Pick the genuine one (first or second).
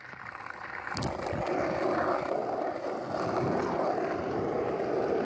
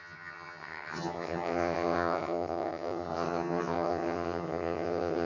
first